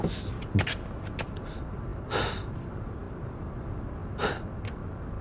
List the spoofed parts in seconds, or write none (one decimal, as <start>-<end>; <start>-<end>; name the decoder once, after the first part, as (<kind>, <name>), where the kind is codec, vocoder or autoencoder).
none